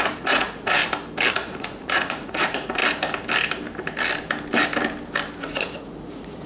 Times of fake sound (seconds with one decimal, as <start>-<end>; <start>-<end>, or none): 0.0-0.8; 1.3-2.8; 5.4-6.5